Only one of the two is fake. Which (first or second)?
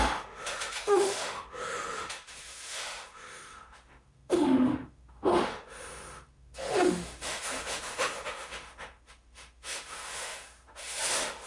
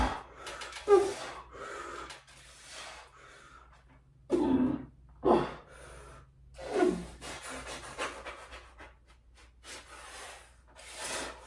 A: first